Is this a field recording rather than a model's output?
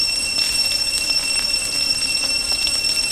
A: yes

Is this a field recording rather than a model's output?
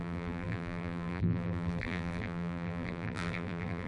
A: no